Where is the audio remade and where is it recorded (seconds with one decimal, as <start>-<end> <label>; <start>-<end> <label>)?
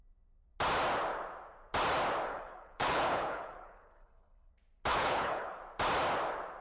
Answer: 0.0-2.3 recorded; 2.3-4.5 remade; 4.5-4.9 recorded; 4.9-5.6 remade; 5.6-6.6 recorded